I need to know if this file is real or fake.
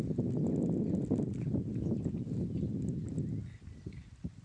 real